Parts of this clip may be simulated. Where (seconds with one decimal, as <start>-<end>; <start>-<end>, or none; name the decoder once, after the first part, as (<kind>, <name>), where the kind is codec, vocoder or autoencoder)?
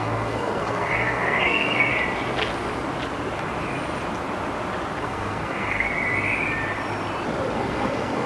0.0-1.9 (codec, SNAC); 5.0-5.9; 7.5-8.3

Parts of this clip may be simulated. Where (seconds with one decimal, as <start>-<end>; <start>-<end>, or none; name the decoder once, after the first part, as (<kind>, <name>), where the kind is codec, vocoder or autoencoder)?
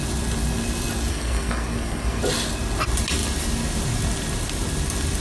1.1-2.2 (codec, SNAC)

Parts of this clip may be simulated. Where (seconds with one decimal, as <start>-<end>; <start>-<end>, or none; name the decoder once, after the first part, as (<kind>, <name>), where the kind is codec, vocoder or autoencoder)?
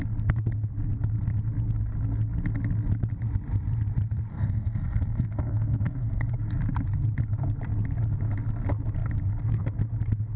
4.3-6.3 (codec, SNAC)